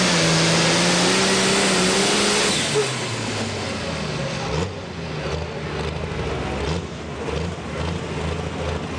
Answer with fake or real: real